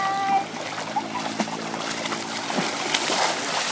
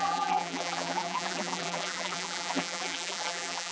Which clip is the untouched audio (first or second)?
first